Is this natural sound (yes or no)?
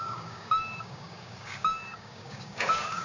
no